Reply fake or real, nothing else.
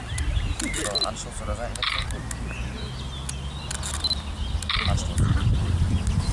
real